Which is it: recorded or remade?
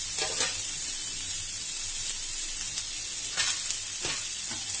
recorded